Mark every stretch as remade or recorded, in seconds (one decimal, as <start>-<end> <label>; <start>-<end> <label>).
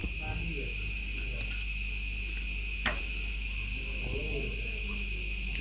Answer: 0.0-5.6 recorded